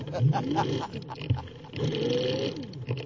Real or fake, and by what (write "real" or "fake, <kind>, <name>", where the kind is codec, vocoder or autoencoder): real